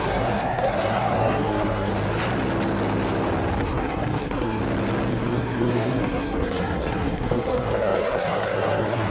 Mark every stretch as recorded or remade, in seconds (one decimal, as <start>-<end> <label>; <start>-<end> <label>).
0.0-1.9 remade; 1.9-3.6 recorded; 3.6-4.6 remade; 4.6-5.1 recorded; 5.1-9.1 remade